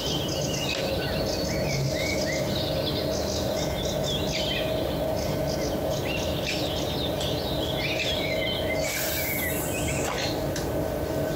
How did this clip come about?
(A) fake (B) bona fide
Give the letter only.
B